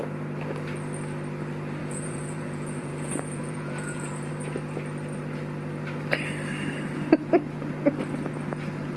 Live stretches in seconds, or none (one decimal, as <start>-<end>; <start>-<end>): 0.0-1.8; 4.3-9.0